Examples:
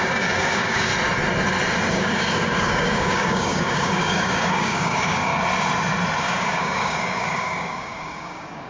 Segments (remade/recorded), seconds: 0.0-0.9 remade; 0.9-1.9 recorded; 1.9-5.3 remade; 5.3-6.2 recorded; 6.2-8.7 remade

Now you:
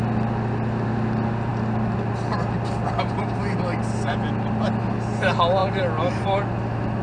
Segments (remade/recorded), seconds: 0.0-5.6 recorded; 5.6-6.4 remade; 6.4-7.0 recorded

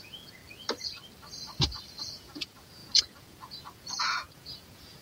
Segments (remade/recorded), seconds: 0.0-0.4 remade; 0.4-2.0 recorded; 2.0-5.0 remade

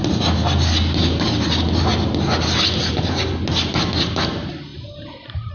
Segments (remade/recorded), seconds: 0.0-5.5 recorded